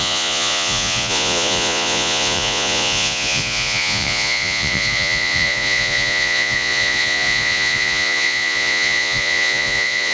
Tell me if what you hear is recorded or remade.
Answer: remade